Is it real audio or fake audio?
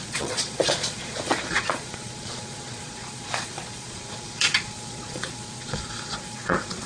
fake